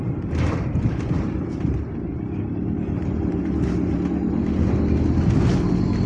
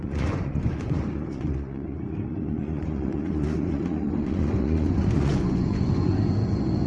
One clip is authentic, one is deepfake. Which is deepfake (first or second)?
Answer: second